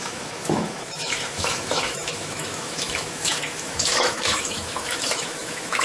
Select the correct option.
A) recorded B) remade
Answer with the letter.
B